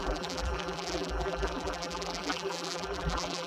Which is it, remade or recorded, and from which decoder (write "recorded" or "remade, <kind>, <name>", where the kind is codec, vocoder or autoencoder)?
remade, vocoder, BigVGAN v2